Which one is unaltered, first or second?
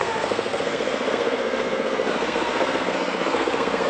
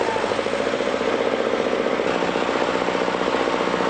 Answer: second